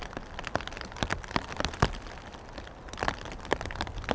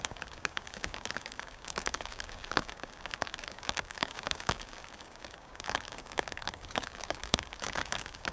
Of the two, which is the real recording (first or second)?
first